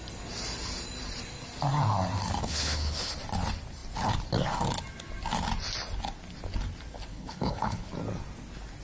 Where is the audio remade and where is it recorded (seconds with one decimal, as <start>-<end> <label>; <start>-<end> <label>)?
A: 0.0-2.4 recorded; 2.4-3.1 remade; 3.1-7.1 recorded; 7.1-7.9 remade; 7.9-8.8 recorded